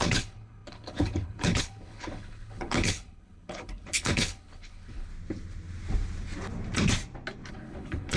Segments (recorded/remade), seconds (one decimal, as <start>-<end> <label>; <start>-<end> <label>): 0.0-5.1 remade; 5.1-7.5 recorded; 7.5-8.2 remade